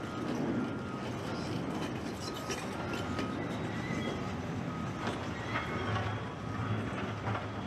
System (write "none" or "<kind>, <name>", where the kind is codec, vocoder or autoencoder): none